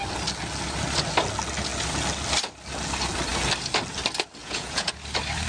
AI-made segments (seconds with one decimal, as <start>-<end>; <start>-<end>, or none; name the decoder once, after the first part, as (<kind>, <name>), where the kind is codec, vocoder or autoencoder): 4.4-4.9 (vocoder, Vocos)